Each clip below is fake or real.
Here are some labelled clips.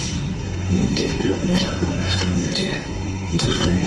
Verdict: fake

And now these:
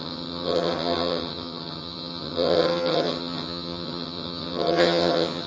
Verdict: fake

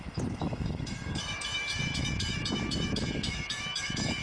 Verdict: fake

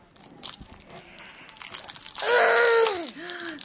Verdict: real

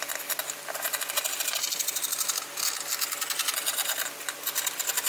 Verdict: real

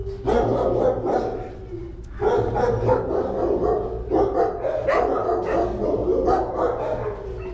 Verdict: real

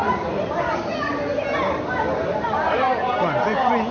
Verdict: real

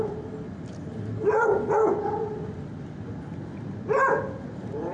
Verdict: real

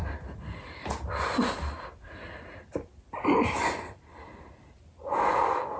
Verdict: real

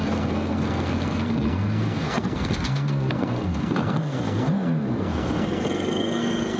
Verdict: fake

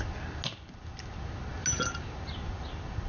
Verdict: real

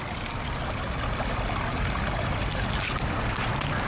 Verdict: real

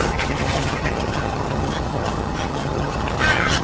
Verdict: fake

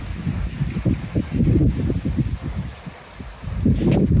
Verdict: real